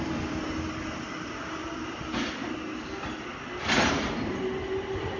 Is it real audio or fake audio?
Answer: real